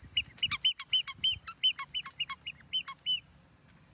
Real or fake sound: real